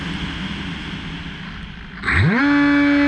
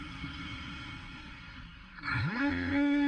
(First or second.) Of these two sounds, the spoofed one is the second